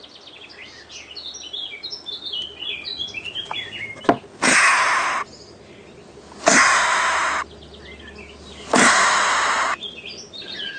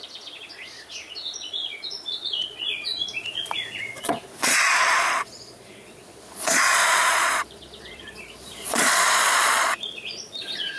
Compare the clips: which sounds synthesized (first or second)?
second